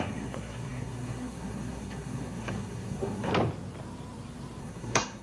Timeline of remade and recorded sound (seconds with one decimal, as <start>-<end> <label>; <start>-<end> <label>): 0.0-3.3 remade; 3.3-4.6 recorded; 4.6-5.2 remade